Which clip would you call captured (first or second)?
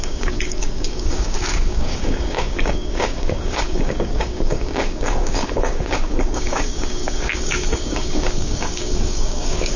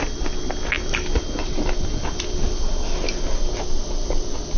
second